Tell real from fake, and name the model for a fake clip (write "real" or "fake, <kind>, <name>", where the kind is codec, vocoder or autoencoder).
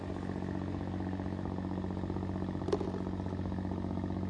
real